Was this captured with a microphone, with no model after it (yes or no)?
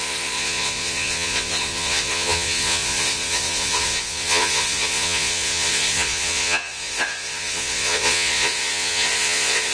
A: no